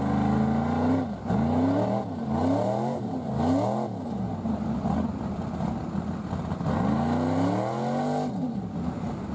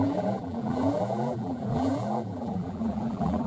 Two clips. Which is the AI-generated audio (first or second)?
second